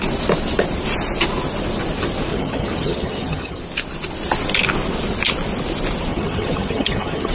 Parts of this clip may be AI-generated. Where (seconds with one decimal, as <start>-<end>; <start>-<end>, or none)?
2.3-3.6; 6.1-7.3